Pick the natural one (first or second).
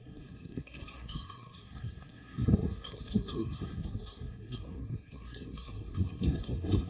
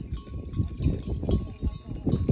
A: second